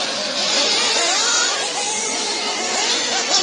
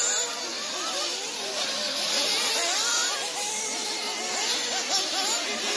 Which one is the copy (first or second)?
first